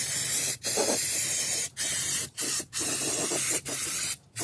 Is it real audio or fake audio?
real